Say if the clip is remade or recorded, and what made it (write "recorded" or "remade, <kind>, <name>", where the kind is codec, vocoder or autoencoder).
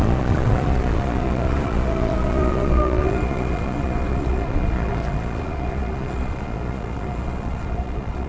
remade, vocoder, Vocos